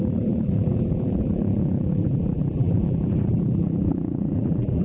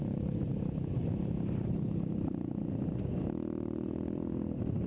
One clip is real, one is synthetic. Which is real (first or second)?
second